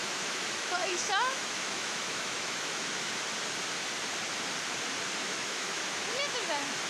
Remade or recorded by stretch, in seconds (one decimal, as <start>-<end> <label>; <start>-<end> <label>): 0.0-3.1 remade; 3.1-5.2 recorded; 5.2-5.8 remade; 5.8-6.9 recorded